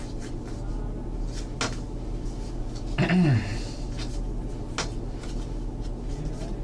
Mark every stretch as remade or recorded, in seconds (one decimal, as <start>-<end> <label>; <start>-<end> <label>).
0.0-6.6 recorded